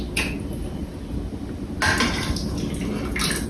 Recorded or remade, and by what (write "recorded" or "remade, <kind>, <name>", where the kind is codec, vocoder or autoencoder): recorded